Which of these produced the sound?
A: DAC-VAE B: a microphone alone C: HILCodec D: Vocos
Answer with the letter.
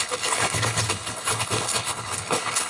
C